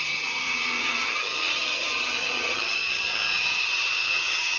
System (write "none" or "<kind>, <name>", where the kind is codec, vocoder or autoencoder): vocoder, HiFi-GAN